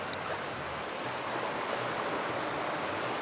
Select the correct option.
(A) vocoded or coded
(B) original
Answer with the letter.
B